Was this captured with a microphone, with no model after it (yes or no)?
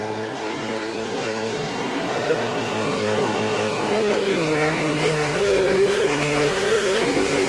no